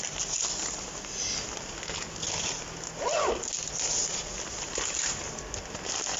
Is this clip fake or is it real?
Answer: real